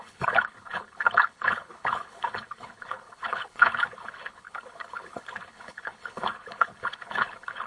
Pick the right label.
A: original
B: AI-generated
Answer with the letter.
B